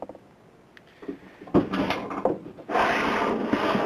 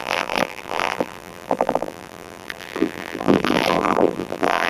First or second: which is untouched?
first